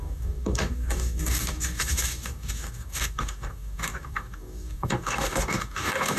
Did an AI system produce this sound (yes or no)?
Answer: yes